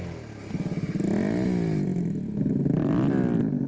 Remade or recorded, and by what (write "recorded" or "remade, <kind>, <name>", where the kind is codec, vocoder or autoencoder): recorded